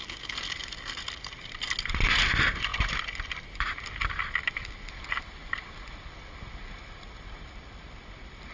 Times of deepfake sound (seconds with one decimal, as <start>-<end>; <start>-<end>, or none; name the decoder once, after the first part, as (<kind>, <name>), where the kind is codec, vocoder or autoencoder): none